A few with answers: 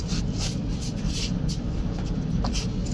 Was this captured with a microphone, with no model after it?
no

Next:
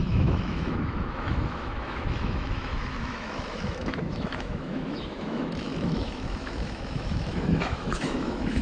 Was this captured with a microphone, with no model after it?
no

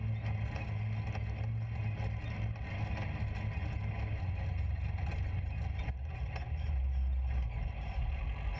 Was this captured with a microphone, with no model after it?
yes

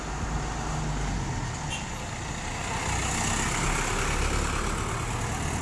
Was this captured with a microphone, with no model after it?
yes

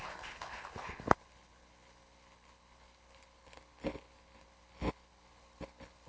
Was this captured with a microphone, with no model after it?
no